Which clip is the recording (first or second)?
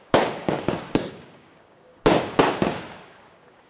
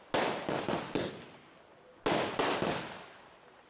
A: second